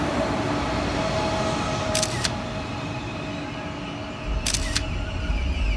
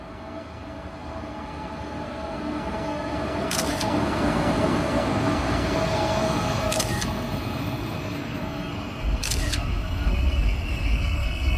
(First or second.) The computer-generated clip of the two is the second